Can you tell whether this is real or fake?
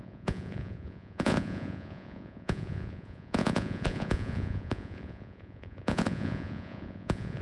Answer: fake